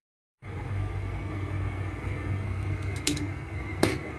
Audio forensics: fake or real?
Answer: fake